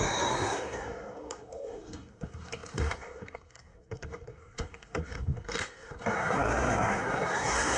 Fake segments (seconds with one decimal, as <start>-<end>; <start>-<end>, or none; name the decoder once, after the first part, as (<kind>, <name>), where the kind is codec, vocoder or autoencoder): 0.0-7.8 (codec, SNAC)